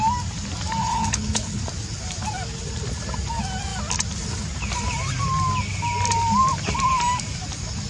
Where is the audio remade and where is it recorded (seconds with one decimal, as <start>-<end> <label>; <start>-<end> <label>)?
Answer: 0.0-0.8 recorded; 0.8-1.6 remade; 1.6-7.9 recorded